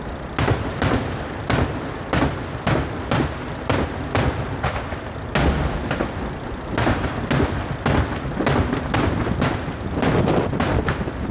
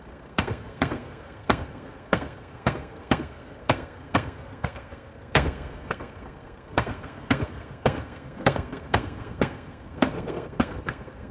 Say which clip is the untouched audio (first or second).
first